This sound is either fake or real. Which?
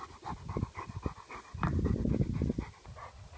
real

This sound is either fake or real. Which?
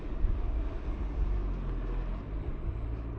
real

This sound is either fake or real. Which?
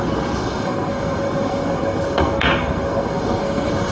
fake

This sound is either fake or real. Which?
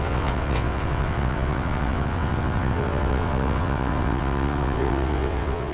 fake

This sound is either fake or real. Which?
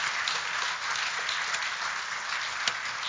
real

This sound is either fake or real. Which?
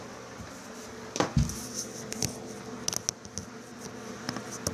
real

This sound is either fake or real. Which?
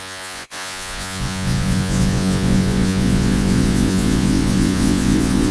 fake